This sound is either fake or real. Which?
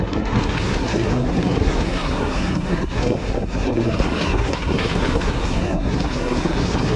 fake